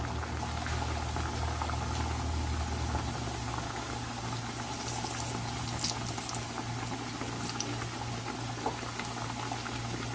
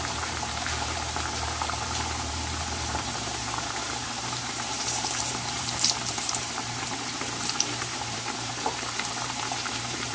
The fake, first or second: second